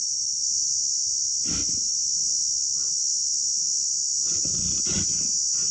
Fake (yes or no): no